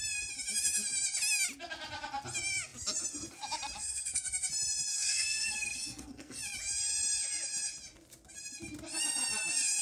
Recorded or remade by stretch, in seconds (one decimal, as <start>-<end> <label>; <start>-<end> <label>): 0.0-3.8 recorded; 3.8-4.3 remade; 4.3-4.9 recorded; 4.9-6.4 remade; 6.4-9.8 recorded